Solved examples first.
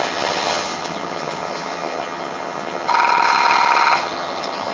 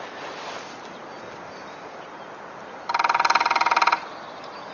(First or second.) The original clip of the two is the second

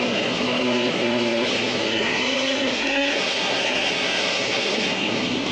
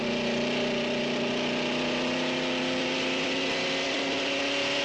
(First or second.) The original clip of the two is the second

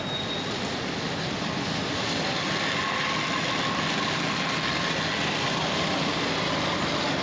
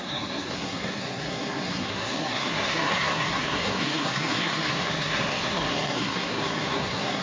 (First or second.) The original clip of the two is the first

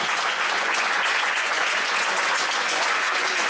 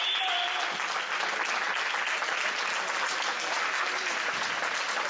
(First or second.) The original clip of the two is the second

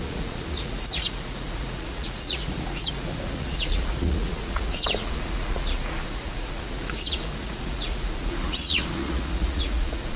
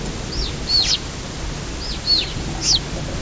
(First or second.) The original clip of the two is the second